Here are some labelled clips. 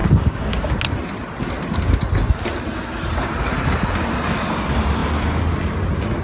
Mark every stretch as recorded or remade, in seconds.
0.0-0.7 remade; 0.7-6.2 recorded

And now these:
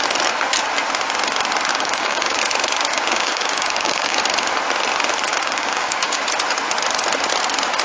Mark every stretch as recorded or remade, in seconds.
0.0-1.7 recorded; 1.7-2.4 remade; 2.4-2.9 recorded; 2.9-4.2 remade; 4.2-5.3 recorded; 5.3-6.2 remade; 6.2-7.8 recorded

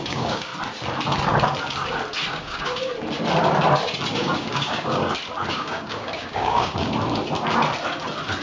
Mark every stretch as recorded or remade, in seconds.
0.0-0.5 remade; 0.5-2.3 recorded; 2.3-2.9 remade; 2.9-4.1 recorded; 4.1-5.0 remade; 5.0-5.5 recorded; 5.5-6.9 remade; 6.9-8.4 recorded